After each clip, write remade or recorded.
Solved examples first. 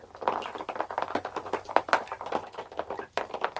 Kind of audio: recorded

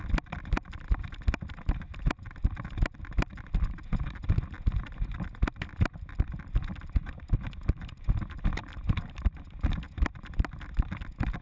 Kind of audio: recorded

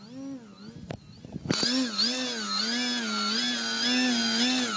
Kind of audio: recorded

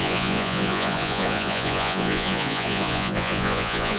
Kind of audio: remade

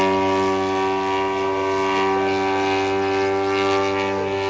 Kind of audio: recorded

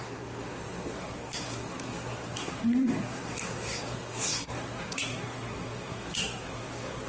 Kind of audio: remade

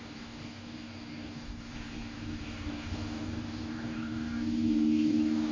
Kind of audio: remade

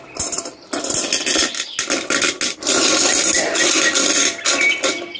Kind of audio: recorded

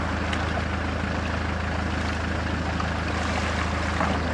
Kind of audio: recorded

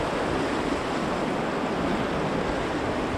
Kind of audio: recorded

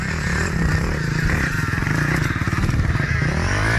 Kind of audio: recorded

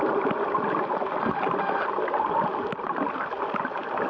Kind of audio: remade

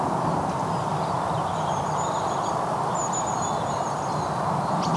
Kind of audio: recorded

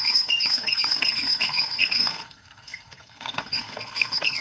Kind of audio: remade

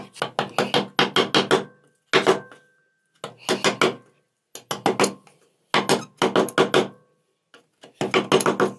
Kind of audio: recorded